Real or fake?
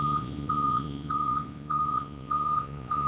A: fake